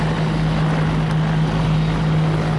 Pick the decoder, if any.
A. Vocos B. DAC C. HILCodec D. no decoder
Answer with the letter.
D